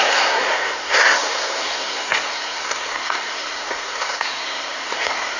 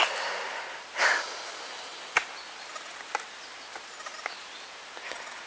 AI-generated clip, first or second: first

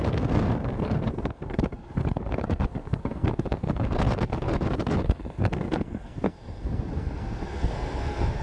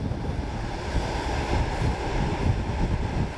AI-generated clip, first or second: first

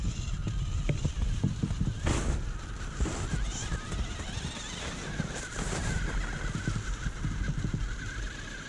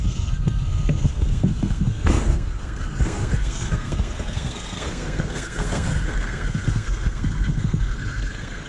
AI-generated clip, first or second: second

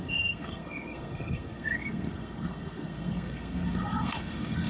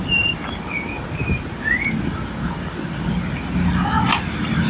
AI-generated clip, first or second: first